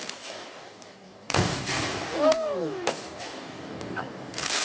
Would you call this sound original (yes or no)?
no